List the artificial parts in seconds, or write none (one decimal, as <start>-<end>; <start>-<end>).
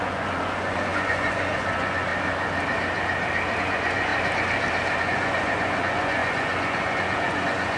0.0-2.1; 3.6-4.1; 5.0-7.8